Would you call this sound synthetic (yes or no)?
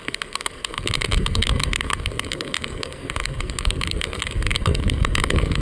yes